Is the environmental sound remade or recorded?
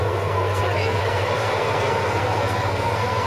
remade